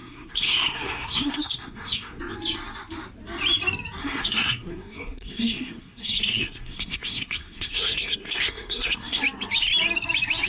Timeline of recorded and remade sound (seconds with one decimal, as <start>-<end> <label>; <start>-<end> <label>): 0.0-2.2 remade; 2.2-4.0 recorded; 4.0-9.2 remade; 9.2-10.5 recorded

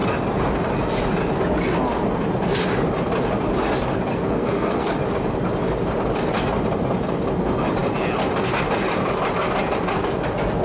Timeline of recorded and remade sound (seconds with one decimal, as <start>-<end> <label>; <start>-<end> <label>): 0.0-4.1 recorded; 4.1-5.0 remade; 5.0-10.6 recorded